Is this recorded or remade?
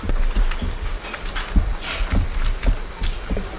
recorded